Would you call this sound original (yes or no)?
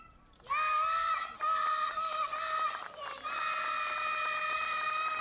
yes